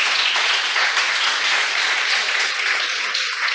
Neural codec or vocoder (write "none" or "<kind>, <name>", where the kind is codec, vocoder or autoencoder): vocoder, Vocos